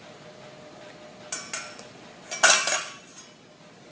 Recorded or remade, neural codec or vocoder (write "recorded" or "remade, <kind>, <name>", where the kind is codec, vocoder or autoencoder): recorded